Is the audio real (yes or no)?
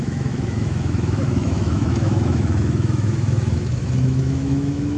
no